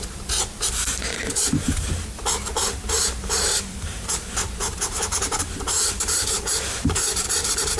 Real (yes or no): no